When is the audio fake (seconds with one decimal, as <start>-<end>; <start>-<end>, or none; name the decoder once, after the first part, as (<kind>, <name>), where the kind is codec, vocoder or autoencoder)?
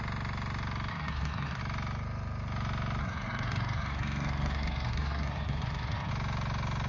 0.9-1.6 (codec, SNAC); 3.0-6.1